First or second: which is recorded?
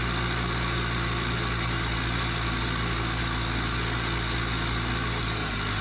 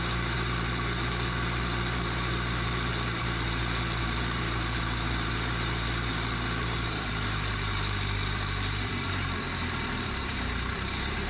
first